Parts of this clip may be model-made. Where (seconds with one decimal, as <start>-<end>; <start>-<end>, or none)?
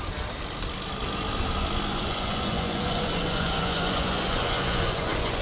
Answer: 1.9-5.4